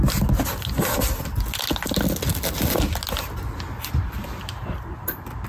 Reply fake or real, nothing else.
real